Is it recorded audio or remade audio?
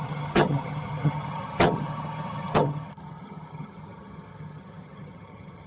remade